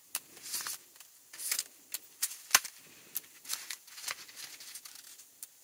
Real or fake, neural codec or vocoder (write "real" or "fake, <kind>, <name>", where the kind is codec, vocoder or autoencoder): real